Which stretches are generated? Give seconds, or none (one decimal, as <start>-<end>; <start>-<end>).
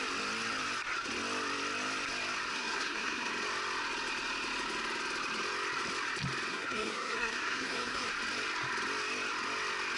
2.5-3.3; 6.5-8.1